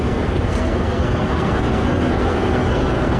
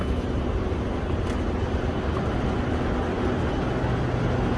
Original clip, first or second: second